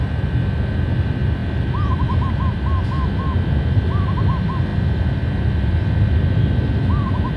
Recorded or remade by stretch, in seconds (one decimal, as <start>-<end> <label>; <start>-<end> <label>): 0.0-7.4 recorded